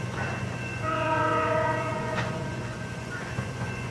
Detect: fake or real fake